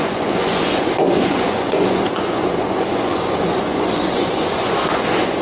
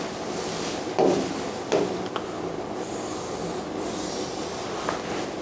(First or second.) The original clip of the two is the second